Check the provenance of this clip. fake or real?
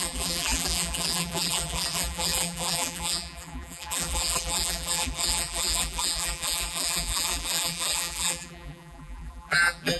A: fake